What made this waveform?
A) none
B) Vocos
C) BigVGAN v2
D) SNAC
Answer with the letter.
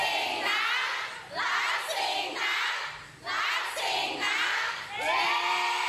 A